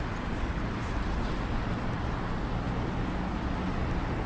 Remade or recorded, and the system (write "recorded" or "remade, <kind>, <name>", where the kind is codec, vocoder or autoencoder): recorded